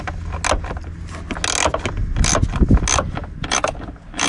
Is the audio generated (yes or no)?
no